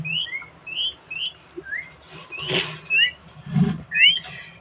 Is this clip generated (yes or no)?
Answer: no